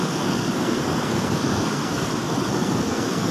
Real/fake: fake